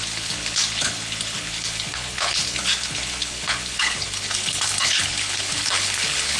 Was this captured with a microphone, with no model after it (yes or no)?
no